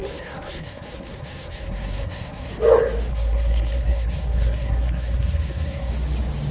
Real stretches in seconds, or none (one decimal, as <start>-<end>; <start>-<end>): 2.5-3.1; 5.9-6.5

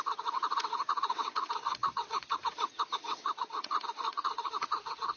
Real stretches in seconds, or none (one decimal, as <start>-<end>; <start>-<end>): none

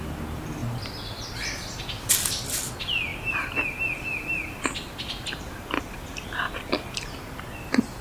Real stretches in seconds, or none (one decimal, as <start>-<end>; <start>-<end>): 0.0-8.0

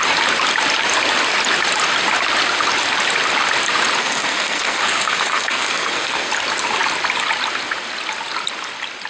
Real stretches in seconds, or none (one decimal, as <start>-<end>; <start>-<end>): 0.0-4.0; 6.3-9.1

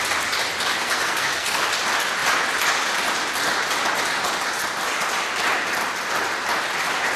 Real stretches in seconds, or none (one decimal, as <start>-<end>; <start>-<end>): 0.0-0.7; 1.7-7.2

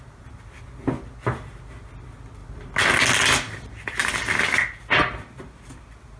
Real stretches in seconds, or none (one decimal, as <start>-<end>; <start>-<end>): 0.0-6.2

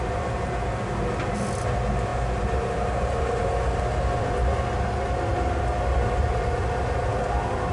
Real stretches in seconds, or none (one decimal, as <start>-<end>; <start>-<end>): 0.0-7.7

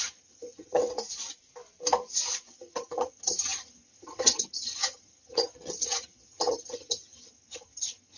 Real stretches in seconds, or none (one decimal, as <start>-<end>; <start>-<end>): 0.8-2.5